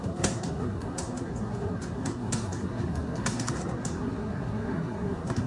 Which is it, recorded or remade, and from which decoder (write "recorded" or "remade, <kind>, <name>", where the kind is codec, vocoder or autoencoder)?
remade, codec, SNAC